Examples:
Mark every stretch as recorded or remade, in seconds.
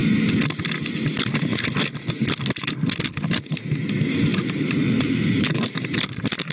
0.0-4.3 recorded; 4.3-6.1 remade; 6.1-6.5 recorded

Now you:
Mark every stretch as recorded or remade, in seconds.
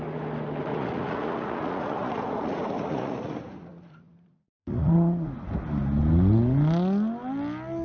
0.0-0.7 recorded; 0.7-5.3 remade; 5.3-7.8 recorded